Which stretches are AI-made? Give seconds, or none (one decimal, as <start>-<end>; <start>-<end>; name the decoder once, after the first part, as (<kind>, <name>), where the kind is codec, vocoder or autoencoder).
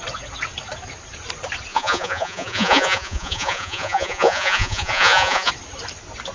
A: 1.7-5.5 (vocoder, Vocos)